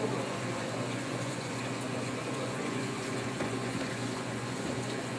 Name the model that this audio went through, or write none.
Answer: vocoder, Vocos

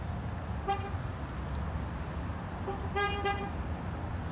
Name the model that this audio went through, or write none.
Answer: none